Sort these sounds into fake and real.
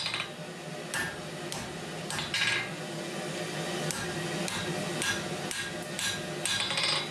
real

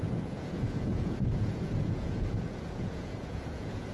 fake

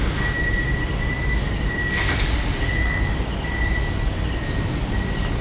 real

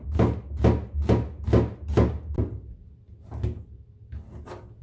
real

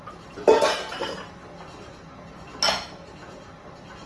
real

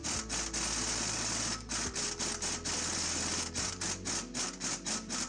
real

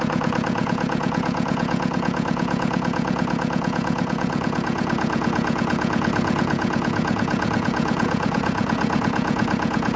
fake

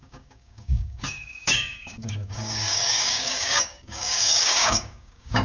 fake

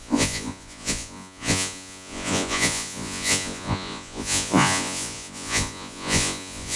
fake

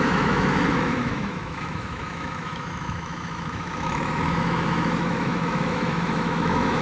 fake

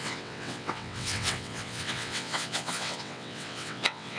fake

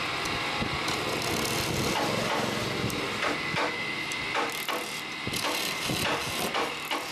real